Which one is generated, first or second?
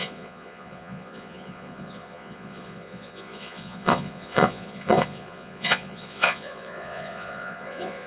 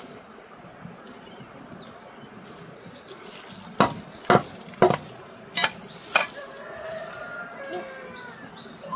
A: first